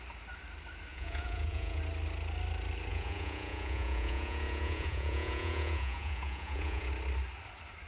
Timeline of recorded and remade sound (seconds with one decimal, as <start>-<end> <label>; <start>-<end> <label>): 0.0-0.9 recorded; 0.9-1.8 remade; 1.8-2.9 recorded; 2.9-6.9 remade; 6.9-7.9 recorded